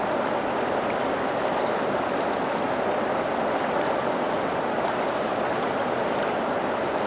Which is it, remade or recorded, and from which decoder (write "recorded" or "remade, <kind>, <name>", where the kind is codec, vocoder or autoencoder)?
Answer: recorded